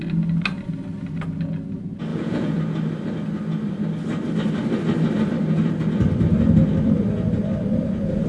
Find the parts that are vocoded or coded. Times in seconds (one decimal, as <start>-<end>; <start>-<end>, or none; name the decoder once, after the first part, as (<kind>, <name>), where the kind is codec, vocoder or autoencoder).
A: 2.1-2.6 (vocoder, Vocos)